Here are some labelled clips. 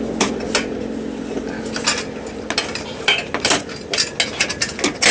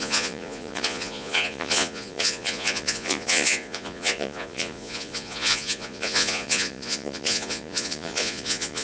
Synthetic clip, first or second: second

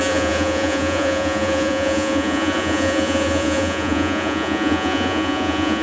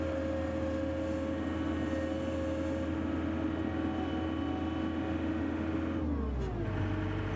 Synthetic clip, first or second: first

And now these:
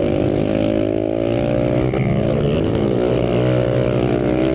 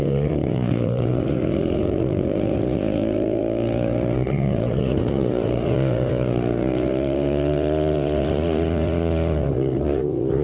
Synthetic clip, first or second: second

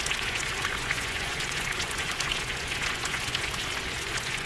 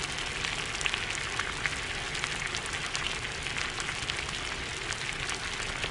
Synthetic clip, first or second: first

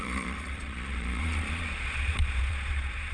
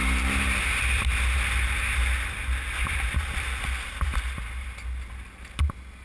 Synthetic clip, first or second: first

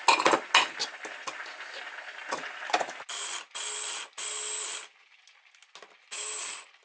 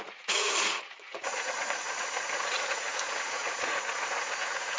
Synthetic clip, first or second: second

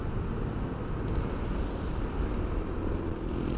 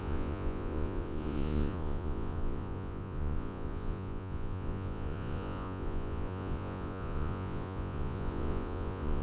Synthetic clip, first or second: second